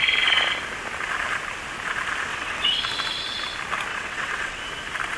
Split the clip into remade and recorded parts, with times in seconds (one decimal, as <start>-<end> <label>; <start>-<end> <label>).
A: 0.0-2.3 recorded; 2.3-2.8 remade; 2.8-3.9 recorded; 3.9-4.6 remade; 4.6-5.2 recorded